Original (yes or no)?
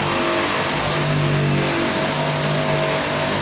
yes